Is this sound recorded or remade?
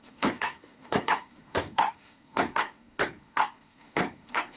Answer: remade